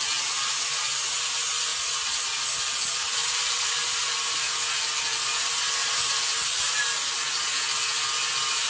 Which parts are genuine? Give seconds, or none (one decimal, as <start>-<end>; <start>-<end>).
0.0-1.7; 2.2-3.2; 4.0-5.8; 6.8-8.7